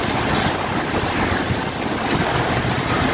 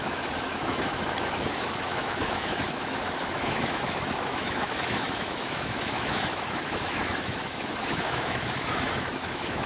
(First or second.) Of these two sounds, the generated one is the second